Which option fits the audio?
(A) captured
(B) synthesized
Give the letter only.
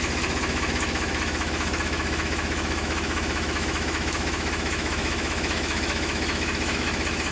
B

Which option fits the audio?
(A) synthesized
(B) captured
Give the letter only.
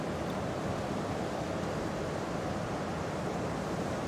B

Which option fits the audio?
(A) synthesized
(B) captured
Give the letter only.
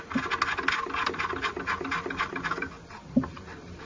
B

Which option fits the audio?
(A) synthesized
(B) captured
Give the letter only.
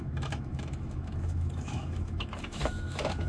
A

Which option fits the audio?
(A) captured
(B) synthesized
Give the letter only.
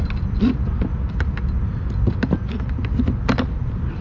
A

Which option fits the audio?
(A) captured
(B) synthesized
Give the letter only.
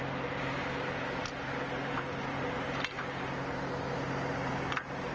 A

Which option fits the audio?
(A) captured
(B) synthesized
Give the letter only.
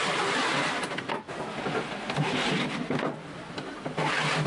A